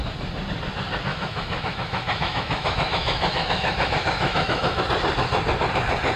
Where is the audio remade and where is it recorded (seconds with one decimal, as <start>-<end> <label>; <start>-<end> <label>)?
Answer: 0.0-1.1 recorded; 1.1-4.8 remade; 4.8-6.2 recorded